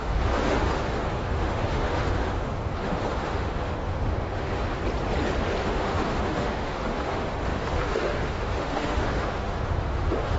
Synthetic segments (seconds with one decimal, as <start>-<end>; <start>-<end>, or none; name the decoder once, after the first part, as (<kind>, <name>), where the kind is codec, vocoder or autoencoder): 0.0-4.8 (autoencoder, DAC-VAE); 5.6-10.4